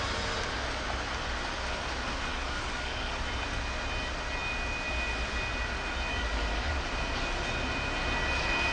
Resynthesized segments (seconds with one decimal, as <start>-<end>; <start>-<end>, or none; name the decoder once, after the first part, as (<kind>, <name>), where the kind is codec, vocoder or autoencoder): 2.3-3.1 (codec, DAC); 6.1-6.7